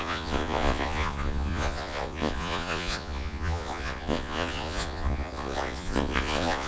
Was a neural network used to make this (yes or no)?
yes